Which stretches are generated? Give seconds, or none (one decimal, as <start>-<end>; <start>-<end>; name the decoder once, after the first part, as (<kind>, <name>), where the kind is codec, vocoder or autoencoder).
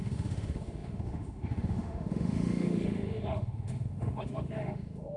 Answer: 0.0-5.2 (autoencoder, DAC-VAE)